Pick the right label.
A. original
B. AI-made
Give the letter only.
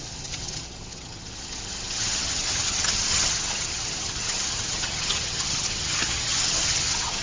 B